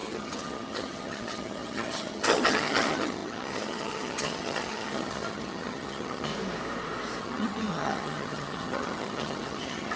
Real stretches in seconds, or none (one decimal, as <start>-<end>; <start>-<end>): 6.3-7.2